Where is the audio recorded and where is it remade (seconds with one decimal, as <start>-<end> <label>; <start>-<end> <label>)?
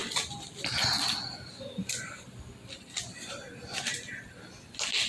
0.0-3.1 remade; 3.1-5.1 recorded